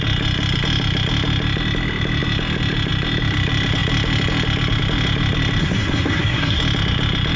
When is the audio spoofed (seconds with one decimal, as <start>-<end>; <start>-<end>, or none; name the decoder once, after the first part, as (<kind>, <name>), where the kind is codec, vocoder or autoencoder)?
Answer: 5.6-6.6 (codec, SNAC)